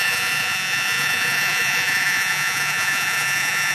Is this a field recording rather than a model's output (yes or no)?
no